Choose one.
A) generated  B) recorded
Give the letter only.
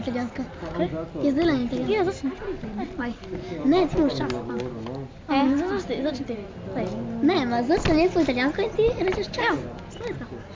B